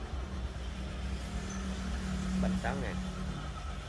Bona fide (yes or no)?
yes